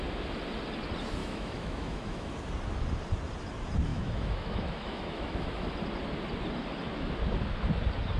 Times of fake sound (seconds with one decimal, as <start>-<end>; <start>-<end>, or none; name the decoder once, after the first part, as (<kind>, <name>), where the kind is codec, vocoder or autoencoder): 1.2-2.3 (autoencoder, DAC-VAE); 3.9-5.7